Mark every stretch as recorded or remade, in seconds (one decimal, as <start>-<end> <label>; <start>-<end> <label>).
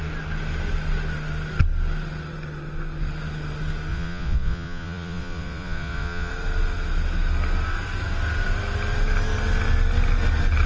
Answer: 0.0-3.9 recorded; 3.9-6.3 remade; 6.3-10.7 recorded